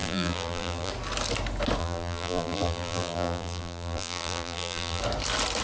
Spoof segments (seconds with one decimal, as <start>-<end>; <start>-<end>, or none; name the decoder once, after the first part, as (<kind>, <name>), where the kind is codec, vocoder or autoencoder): 0.0-0.9 (vocoder, BigVGAN v2); 1.8-5.0